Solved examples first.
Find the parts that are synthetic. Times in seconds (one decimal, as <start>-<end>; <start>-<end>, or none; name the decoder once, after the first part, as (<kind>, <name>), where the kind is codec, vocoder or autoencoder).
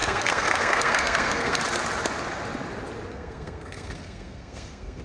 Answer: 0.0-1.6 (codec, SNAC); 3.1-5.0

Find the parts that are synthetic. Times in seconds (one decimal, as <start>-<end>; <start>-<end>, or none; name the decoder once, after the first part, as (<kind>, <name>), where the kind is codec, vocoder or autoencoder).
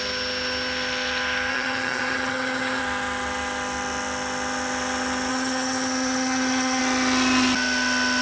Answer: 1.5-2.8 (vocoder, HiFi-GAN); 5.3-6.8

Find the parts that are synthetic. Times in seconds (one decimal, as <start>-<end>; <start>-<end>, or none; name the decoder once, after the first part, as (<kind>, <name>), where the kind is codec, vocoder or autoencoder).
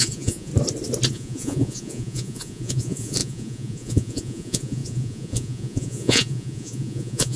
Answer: 0.0-0.5 (vocoder, Vocos); 1.1-7.4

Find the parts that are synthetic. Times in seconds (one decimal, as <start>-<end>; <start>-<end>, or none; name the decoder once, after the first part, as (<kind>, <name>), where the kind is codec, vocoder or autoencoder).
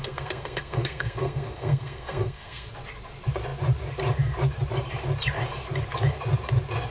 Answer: 0.0-2.7 (codec, SNAC)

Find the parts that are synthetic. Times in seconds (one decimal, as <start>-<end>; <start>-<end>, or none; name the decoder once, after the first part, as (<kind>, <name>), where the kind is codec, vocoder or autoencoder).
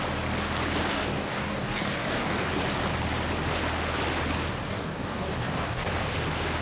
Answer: 0.9-2.5 (codec, DAC); 4.7-5.9